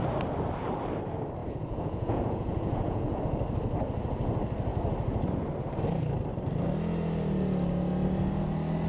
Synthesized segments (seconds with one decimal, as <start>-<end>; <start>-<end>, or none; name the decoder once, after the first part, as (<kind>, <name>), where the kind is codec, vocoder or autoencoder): 1.4-3.2 (vocoder, Vocos)